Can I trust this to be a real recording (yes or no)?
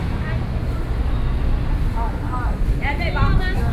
yes